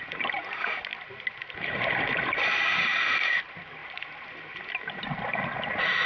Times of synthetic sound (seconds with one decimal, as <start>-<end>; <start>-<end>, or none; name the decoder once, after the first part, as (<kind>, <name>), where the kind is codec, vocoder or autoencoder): none